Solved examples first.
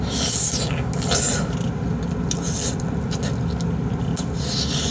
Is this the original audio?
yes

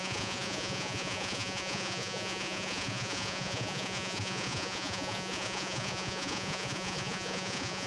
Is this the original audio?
no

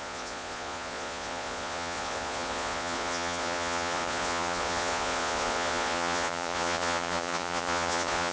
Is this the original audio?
no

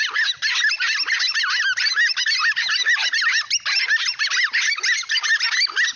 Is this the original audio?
yes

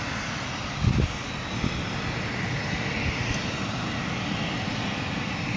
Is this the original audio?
yes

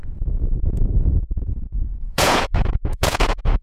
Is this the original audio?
no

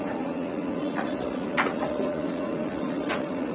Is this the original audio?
no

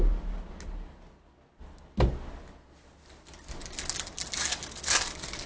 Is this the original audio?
yes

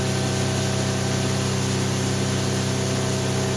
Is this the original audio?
yes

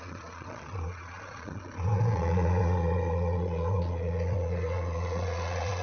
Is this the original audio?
no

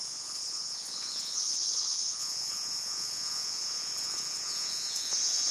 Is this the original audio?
no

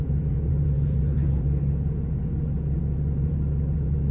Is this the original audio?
no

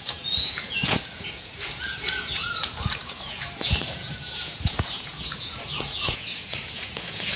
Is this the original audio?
no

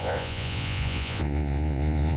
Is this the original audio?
no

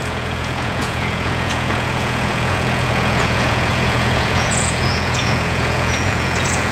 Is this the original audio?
no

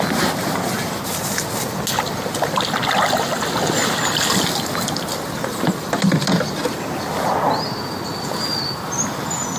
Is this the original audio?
yes